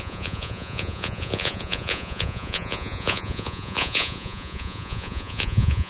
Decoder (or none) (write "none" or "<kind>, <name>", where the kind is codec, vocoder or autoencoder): vocoder, Vocos